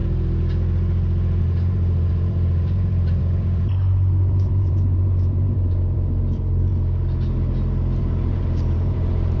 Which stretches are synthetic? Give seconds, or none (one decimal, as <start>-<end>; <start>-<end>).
1.4-6.7; 8.0-9.4